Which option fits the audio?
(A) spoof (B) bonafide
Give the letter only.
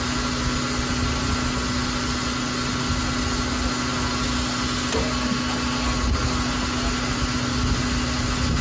B